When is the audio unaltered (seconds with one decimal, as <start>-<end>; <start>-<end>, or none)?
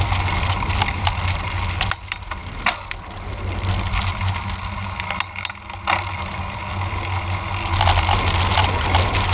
0.0-9.3